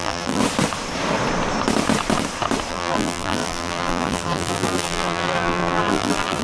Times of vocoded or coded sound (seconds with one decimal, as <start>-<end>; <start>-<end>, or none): 0.0-0.4; 2.7-6.4